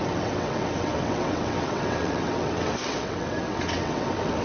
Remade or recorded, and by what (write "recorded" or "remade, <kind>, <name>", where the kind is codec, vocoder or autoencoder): remade, vocoder, WaveNeXt